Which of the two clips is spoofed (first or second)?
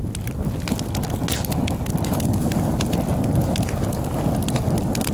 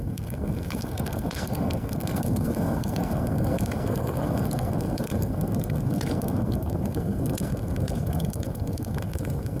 second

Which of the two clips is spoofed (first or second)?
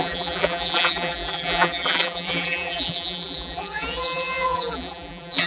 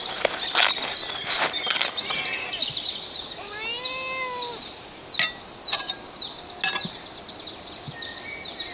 first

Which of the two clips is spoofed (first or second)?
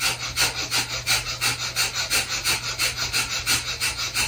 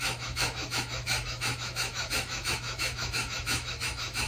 second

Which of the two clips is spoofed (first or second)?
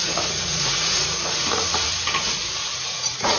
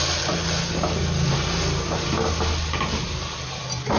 first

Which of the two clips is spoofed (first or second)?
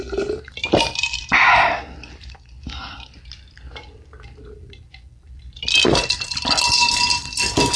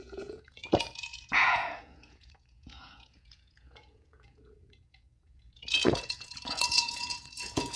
second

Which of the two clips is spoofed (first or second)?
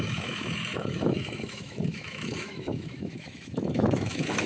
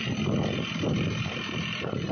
first